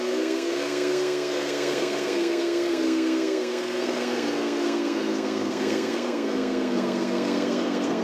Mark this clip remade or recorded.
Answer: remade